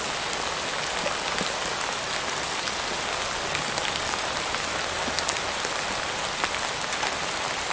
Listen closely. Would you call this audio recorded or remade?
recorded